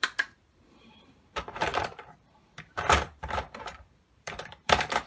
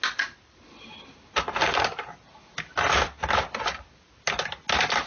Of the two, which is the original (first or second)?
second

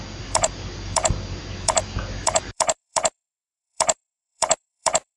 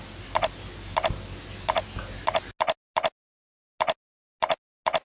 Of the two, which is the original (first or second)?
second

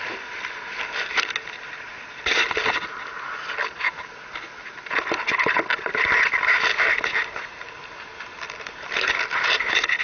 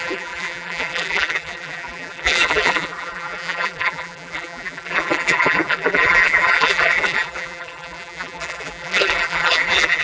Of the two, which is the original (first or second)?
first